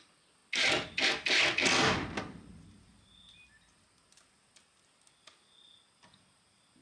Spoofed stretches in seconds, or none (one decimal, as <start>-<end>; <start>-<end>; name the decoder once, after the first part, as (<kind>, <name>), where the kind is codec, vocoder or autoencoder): none